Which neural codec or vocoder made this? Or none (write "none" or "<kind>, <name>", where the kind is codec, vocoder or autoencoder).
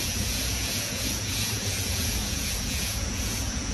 vocoder, Vocos